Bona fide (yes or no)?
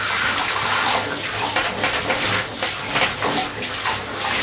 yes